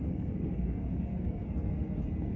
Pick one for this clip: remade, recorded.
remade